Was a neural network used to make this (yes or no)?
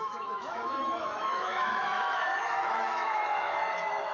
yes